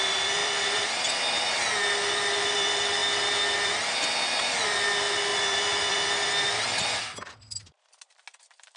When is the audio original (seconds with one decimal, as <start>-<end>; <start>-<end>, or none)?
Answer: 0.0-0.4; 1.0-8.8